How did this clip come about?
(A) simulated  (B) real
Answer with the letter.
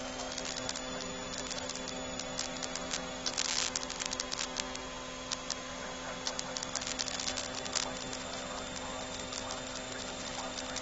B